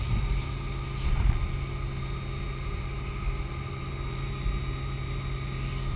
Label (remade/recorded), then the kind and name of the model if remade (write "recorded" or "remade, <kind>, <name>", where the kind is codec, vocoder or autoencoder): recorded